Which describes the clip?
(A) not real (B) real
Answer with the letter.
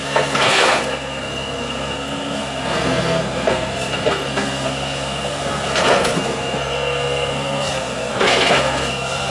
A